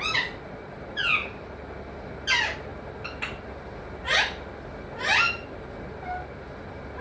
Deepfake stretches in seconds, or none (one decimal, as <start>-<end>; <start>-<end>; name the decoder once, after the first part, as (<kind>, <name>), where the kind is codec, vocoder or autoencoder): none